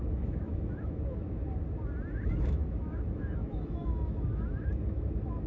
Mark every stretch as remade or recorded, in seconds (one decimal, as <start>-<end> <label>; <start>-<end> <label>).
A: 0.0-1.4 remade; 1.4-2.1 recorded; 2.1-5.5 remade